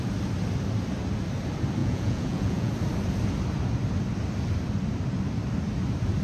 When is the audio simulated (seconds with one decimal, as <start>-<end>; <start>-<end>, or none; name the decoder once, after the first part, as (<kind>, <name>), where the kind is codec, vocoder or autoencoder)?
1.8-2.7 (vocoder, Vocos)